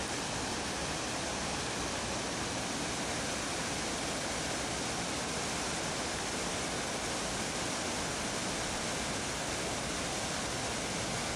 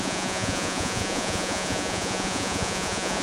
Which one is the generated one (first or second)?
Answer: second